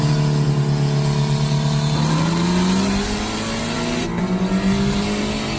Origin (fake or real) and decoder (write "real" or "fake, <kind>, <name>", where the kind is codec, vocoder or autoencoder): real